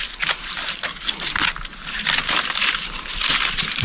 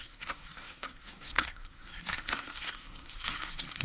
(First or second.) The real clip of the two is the first